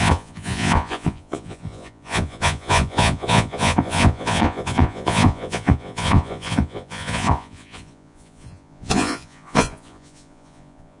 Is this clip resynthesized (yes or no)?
yes